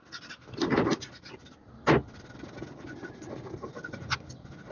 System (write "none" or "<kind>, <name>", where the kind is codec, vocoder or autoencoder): none